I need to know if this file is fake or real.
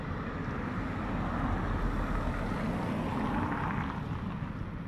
real